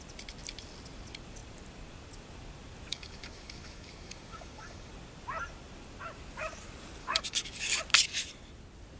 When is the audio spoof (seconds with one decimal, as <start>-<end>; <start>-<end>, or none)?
2.9-4.9; 7.0-7.8